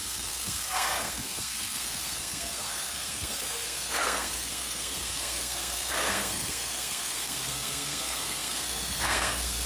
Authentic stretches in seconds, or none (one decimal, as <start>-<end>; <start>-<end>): none